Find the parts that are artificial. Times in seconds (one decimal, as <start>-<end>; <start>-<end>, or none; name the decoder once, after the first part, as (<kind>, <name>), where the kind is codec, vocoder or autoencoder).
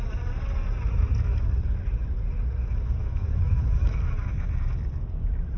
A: 3.0-4.0 (autoencoder, DAC-VAE)